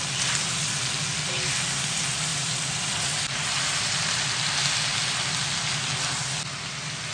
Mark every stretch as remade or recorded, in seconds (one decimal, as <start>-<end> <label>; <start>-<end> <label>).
0.0-2.3 recorded; 2.3-3.5 remade; 3.5-4.9 recorded; 4.9-5.5 remade; 5.5-7.1 recorded